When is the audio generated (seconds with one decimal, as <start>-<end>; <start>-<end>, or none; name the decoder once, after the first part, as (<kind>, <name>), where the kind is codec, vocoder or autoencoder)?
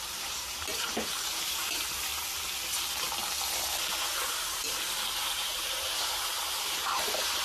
0.0-2.1 (vocoder, BigVGAN v2); 6.5-7.4